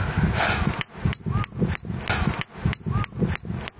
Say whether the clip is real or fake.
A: real